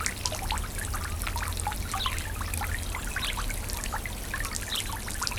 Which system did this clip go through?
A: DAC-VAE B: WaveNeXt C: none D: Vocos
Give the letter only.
C